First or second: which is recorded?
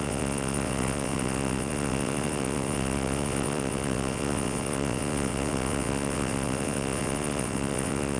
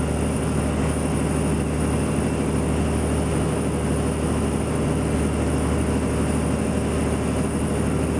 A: second